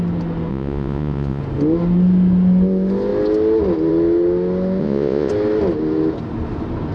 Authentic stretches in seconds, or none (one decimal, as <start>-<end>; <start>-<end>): 0.0-0.5; 1.4-4.8; 5.3-6.9